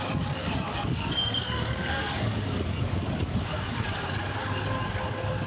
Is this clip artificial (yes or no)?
yes